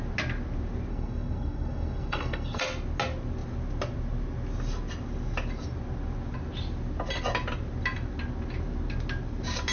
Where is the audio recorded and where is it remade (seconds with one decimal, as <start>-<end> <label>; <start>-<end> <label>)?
0.0-0.9 recorded; 0.9-2.6 remade; 2.6-9.7 recorded